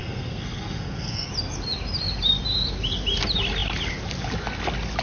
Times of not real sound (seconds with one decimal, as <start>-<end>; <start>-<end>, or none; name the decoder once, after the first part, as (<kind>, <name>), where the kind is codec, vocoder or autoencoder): 0.0-1.3 (codec, SNAC)